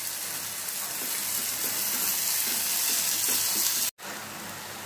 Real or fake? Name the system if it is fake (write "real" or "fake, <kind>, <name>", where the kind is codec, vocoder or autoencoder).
real